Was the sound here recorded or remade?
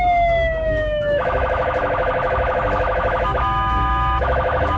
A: remade